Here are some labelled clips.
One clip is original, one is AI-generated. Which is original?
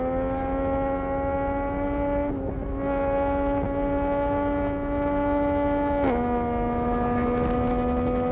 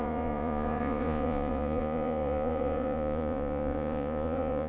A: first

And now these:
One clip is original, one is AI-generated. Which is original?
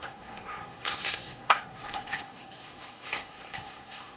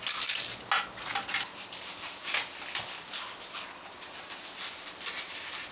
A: second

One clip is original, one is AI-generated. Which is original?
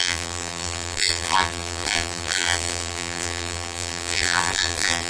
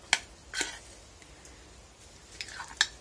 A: second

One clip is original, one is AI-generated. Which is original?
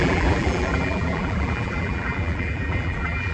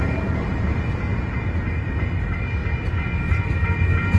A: second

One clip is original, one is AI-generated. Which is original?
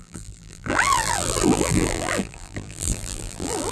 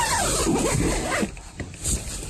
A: second